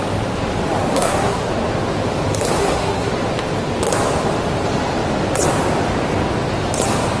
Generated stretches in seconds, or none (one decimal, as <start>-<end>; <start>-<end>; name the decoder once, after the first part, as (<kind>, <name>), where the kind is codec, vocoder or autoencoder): 0.9-1.5 (codec, SNAC); 2.6-3.1